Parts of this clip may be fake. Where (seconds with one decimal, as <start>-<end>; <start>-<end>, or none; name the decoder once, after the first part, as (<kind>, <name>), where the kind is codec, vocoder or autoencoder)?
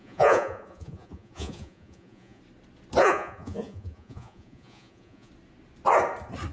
0.0-2.4 (vocoder, Vocos); 3.0-5.3